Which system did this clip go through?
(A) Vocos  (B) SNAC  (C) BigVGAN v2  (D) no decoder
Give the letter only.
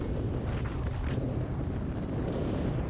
C